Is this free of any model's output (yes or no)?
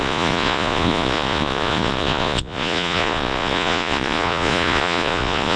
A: no